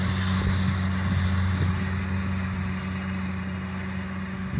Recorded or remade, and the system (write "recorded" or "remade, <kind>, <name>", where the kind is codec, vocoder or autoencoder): recorded